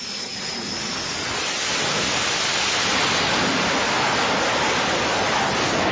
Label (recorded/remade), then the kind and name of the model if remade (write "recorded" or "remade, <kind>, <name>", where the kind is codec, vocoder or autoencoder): recorded